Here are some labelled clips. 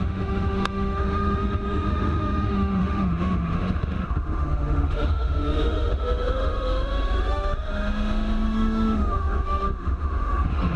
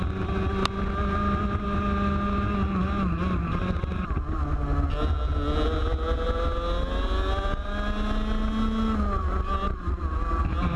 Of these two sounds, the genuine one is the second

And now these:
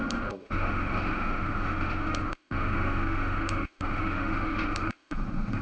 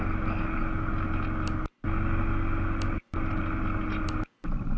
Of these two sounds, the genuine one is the second